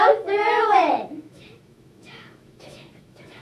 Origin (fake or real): fake